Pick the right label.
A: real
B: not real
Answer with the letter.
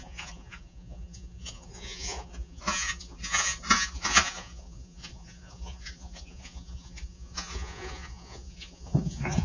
B